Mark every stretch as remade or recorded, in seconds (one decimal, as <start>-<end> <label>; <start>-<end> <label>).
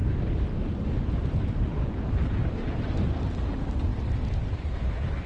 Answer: 0.0-3.2 remade; 3.2-5.3 recorded